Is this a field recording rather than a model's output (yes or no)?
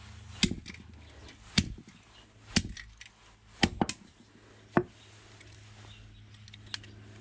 yes